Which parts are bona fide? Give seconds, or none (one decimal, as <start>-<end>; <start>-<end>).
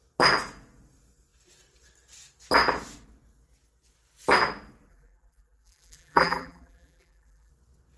0.0-4.9; 7.5-8.0